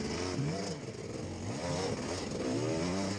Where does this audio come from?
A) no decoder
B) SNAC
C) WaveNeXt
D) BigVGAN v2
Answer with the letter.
A